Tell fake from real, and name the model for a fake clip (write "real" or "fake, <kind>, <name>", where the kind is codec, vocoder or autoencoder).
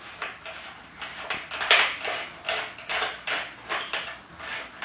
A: real